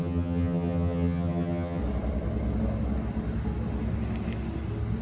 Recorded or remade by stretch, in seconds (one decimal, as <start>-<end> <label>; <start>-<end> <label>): 0.0-1.8 remade; 1.8-5.0 recorded